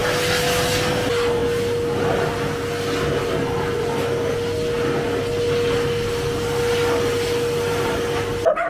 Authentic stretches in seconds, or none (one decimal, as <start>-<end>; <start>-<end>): 0.0-8.7